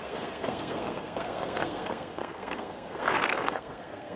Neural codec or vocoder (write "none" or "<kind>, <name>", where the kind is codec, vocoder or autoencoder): codec, SNAC